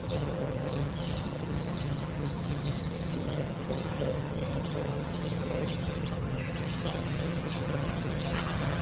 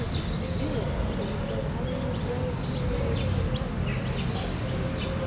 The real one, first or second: second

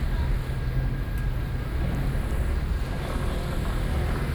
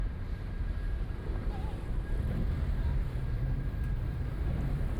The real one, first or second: first